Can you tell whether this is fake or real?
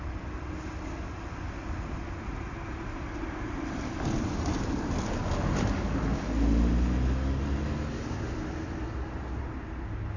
real